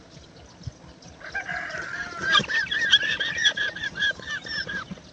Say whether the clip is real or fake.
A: real